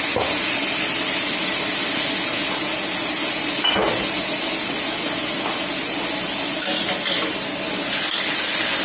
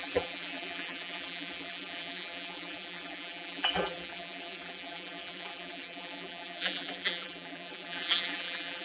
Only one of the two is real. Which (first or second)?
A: first